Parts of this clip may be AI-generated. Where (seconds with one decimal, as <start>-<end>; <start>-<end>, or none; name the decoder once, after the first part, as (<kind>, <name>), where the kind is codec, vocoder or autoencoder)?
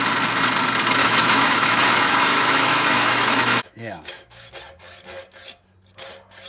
1.0-4.5 (autoencoder, DAC-VAE)